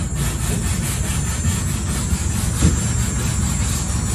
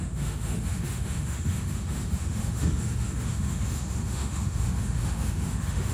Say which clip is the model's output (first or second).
second